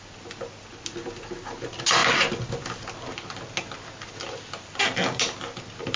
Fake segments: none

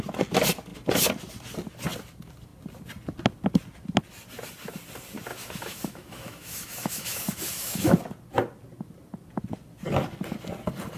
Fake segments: 5.3-7.9

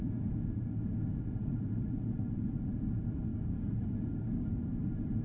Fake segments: 3.3-4.6

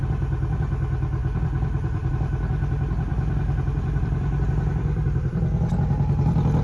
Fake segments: 1.2-2.1; 3.1-5.7